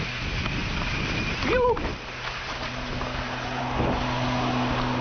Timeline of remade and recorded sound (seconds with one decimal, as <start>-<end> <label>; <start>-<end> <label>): 0.0-5.0 recorded

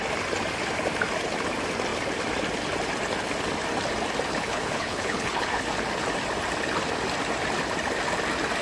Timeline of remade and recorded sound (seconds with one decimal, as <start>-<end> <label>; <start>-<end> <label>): 0.0-4.3 recorded; 4.3-5.6 remade; 5.6-8.6 recorded

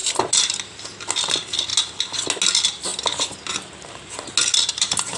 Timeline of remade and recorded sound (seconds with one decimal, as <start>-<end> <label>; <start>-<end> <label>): 0.0-5.2 recorded

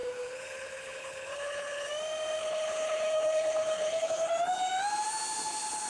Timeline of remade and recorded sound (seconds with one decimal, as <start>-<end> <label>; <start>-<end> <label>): 0.0-1.9 remade; 1.9-2.4 recorded; 2.4-4.3 remade; 4.3-5.9 recorded

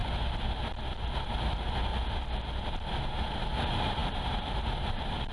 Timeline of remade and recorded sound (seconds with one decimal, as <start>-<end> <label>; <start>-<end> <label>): 0.0-1.3 recorded; 1.3-1.9 remade; 1.9-3.4 recorded; 3.4-5.3 remade

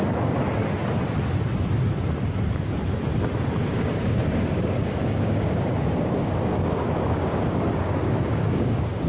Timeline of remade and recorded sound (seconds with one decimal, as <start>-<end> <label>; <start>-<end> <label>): 0.0-3.7 recorded; 3.7-9.1 remade

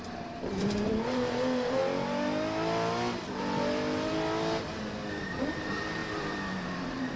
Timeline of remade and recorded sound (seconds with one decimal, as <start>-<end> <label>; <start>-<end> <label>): 0.0-1.8 remade; 1.8-5.2 recorded; 5.2-7.2 remade